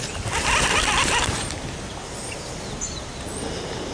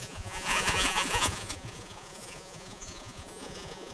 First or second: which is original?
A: first